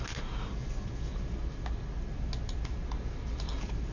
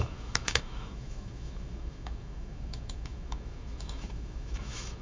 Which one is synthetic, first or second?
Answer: second